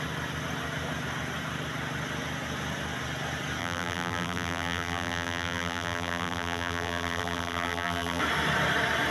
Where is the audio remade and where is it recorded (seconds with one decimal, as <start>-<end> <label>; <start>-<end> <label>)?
0.0-3.6 recorded; 3.6-8.2 remade; 8.2-9.1 recorded